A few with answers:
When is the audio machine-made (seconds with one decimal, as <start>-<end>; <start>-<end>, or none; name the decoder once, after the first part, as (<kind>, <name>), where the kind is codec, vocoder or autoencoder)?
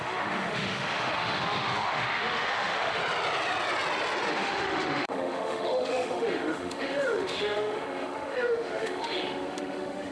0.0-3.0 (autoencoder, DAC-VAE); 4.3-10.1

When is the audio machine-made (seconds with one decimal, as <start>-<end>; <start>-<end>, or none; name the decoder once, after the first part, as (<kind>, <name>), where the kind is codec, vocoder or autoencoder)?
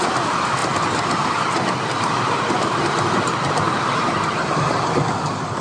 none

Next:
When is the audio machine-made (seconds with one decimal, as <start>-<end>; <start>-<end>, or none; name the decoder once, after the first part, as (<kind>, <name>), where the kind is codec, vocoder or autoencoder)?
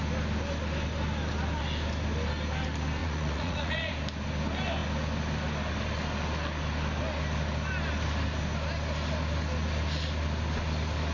3.0-3.9 (vocoder, Vocos)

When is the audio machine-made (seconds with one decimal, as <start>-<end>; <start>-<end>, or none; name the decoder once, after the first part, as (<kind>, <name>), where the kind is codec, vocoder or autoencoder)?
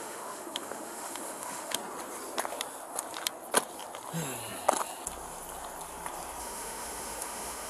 0.0-1.8 (autoencoder, DAC-VAE); 6.4-7.7